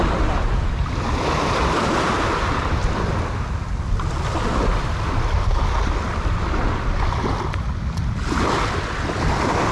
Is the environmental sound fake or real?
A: real